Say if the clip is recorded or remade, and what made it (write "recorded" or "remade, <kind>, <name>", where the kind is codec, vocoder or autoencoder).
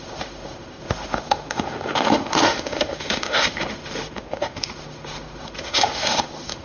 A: remade, autoencoder, DAC-VAE